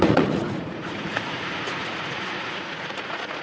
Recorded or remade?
remade